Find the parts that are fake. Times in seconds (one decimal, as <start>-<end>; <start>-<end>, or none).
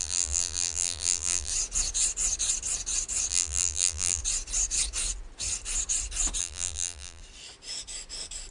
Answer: 0.0-1.5; 3.3-4.2; 6.4-7.2